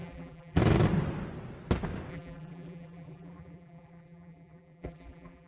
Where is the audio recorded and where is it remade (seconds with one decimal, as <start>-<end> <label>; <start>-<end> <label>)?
0.0-0.6 remade; 0.6-2.1 recorded; 2.1-5.5 remade